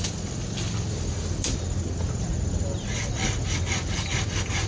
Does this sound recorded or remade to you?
recorded